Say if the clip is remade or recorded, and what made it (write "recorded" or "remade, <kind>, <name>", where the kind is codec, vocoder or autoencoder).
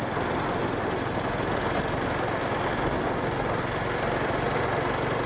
recorded